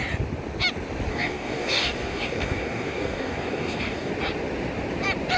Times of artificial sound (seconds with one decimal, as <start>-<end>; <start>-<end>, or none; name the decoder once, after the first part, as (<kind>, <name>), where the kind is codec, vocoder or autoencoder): 1.1-4.1 (codec, DAC)